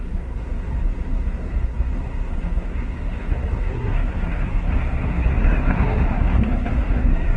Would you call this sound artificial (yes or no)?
yes